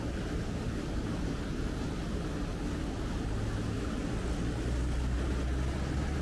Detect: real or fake real